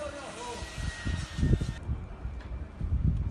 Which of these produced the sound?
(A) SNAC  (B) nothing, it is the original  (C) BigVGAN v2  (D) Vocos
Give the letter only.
B